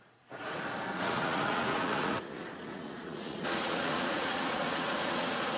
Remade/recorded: remade